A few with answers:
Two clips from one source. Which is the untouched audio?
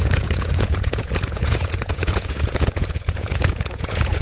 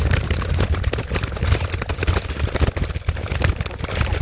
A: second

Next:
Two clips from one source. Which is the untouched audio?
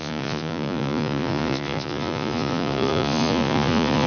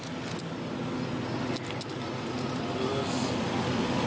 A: second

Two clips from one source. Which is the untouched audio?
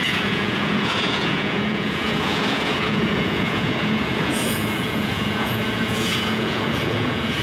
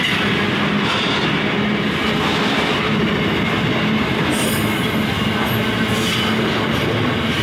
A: second